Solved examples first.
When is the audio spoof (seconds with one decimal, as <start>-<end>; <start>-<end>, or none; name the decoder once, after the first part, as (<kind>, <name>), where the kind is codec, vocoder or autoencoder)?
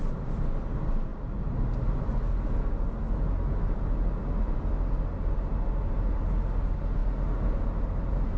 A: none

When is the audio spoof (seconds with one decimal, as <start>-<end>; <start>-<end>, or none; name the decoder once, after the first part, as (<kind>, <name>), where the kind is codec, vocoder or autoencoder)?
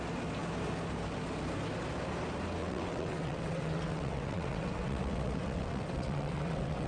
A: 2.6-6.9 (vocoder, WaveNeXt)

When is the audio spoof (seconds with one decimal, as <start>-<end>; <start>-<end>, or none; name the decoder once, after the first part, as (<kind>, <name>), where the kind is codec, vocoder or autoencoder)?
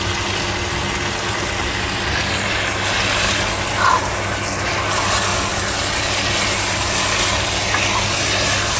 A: none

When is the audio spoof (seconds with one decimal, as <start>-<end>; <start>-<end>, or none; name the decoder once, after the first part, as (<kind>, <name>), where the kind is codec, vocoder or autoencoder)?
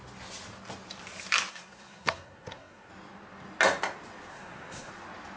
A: 1.5-2.9 (codec, SNAC); 4.3-4.9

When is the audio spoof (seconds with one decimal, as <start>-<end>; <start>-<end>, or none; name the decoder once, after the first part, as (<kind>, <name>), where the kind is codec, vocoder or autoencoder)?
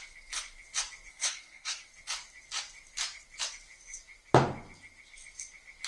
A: 1.1-1.9 (codec, SNAC)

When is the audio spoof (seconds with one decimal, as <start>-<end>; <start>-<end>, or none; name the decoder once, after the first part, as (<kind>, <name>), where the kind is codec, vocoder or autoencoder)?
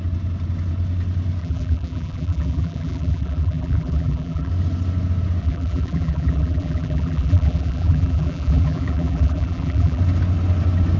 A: 1.4-4.5 (vocoder, BigVGAN v2); 5.4-10.0